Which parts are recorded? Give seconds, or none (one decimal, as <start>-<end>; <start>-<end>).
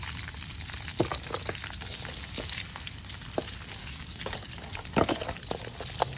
0.0-3.8; 5.4-6.2